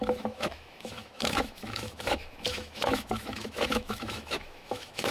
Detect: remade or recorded remade